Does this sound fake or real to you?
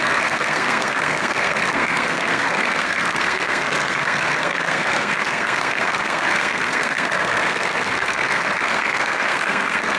fake